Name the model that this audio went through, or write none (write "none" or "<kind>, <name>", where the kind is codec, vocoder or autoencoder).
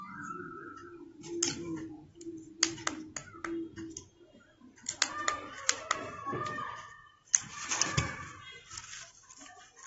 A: none